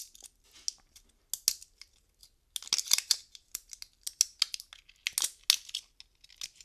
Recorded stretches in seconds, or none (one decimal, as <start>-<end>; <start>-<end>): 0.0-6.6